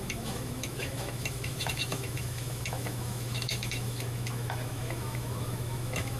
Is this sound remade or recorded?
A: remade